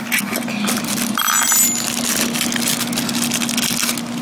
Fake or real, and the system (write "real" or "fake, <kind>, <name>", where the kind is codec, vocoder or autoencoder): real